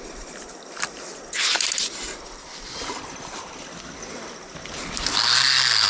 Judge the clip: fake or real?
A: real